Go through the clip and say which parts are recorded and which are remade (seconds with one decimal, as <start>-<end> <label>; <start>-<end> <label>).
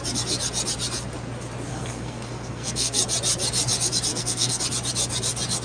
0.0-1.7 recorded; 1.7-3.0 remade; 3.0-4.1 recorded; 4.1-4.6 remade; 4.6-5.6 recorded